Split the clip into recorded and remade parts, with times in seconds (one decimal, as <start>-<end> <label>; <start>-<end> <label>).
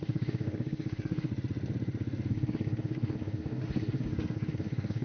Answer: 0.0-1.3 remade; 1.3-2.3 recorded; 2.3-5.0 remade